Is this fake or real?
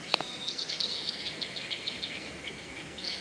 fake